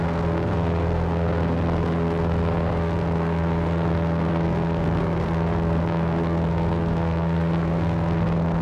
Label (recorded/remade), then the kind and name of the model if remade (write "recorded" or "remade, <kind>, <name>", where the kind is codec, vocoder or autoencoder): remade, codec, SNAC